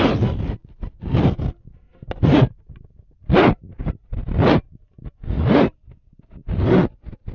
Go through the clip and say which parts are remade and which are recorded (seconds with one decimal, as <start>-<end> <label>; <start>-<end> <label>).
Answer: 0.0-7.3 recorded

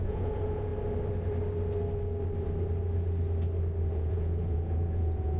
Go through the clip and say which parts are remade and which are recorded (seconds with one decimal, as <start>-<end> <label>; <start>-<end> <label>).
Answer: 0.0-0.7 remade; 0.7-3.9 recorded; 3.9-5.4 remade

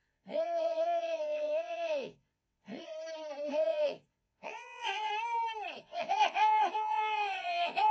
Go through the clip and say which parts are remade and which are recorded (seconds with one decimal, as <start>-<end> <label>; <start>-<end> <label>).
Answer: 0.0-2.9 remade; 2.9-3.5 recorded; 3.5-5.1 remade; 5.1-5.8 recorded; 5.8-7.9 remade